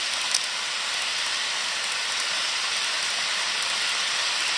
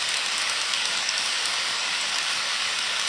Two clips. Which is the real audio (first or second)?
first